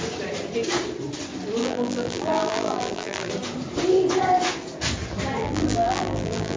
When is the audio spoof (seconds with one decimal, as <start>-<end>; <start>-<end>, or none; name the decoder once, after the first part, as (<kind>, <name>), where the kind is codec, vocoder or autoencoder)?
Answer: 1.6-3.3 (vocoder, BigVGAN v2); 5.4-6.6